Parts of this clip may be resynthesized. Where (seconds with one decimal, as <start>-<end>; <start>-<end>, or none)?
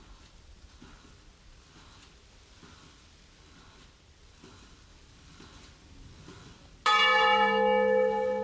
none